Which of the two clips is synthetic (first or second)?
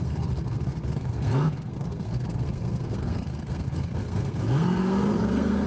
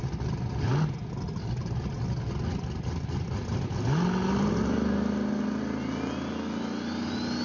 first